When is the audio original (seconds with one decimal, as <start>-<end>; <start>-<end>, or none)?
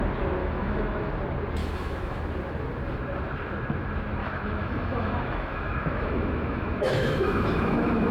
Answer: 0.0-0.4; 1.1-1.6; 2.2-4.2